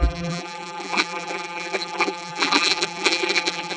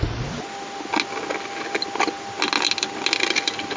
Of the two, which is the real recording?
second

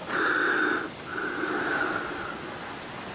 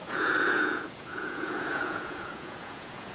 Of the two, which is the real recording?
first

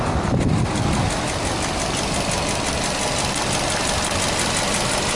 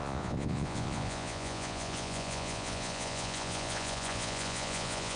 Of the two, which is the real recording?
first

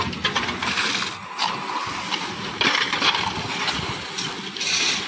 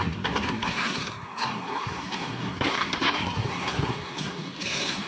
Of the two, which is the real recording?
first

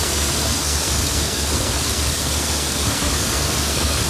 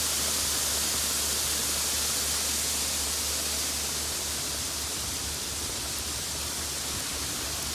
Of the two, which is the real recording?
second